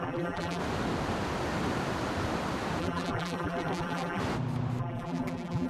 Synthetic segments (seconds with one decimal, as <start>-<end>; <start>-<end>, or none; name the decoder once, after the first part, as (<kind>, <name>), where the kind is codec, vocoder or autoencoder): 0.0-0.6 (vocoder, BigVGAN v2); 2.8-4.2; 4.8-5.7

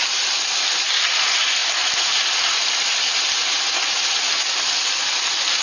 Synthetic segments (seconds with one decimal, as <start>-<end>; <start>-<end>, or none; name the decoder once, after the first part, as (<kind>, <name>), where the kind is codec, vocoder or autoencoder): none